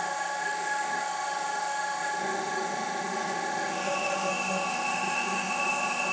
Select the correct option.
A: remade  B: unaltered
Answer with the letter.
A